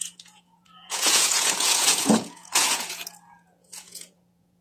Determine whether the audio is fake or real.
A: fake